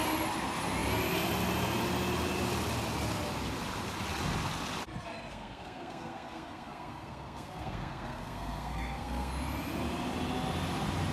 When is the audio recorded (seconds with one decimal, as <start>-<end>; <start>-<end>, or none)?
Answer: 0.0-5.3; 9.3-11.1